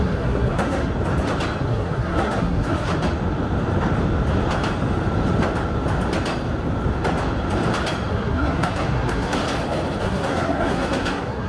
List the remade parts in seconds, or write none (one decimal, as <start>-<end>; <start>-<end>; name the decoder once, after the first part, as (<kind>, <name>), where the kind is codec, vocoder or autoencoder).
0.0-0.9 (codec, SNAC); 1.6-2.9; 8.1-9.4; 10.0-11.5